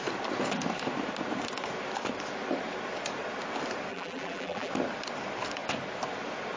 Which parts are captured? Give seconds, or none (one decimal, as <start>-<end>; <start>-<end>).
0.0-3.9; 4.7-6.6

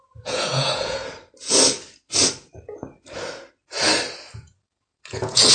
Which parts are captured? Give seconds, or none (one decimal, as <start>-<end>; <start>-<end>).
1.0-4.3

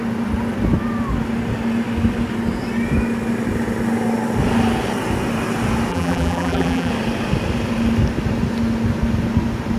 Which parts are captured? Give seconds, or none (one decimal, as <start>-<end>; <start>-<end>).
0.0-5.9; 6.9-9.8

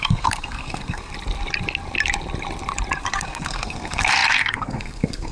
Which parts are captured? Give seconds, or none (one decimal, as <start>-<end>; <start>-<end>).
1.1-3.0

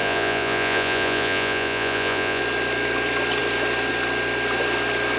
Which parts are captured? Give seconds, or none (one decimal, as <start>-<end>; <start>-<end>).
2.4-5.2

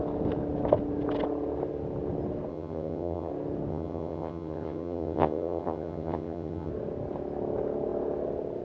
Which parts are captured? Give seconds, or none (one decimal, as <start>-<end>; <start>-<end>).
0.0-2.5; 3.3-3.7; 6.7-8.6

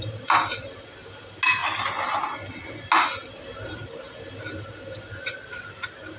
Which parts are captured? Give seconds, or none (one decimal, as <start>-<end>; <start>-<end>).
0.0-6.2